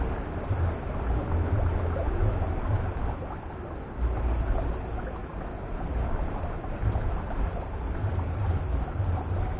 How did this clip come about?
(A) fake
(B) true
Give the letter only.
B